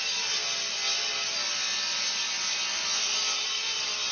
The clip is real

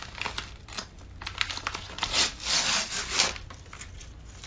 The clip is real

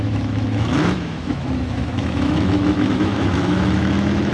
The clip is fake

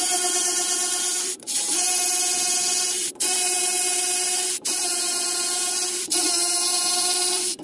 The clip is fake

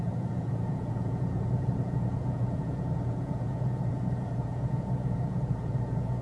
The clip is fake